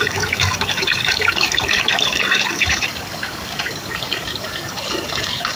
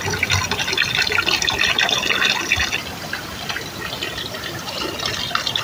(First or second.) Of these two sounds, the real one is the second